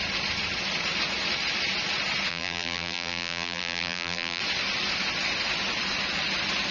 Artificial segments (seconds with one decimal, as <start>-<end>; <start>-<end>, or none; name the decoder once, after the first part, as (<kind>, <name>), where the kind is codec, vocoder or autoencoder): 2.3-4.4 (vocoder, BigVGAN v2)